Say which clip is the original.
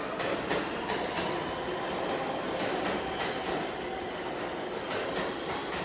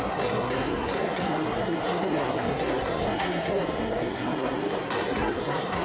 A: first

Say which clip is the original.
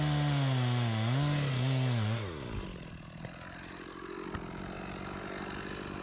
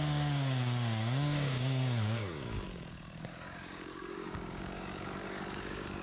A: first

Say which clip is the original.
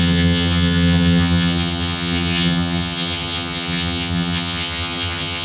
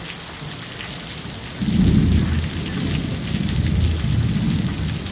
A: second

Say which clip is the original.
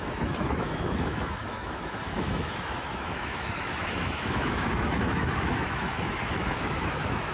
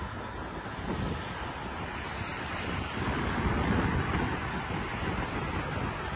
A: second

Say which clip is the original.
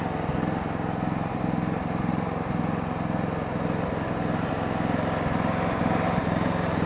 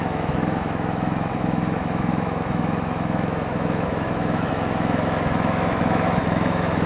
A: first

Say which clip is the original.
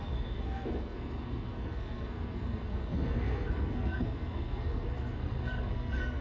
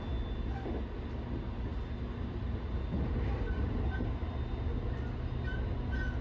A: second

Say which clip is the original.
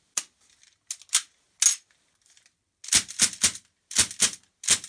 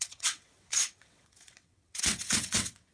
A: first